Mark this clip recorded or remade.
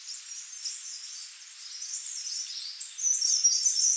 recorded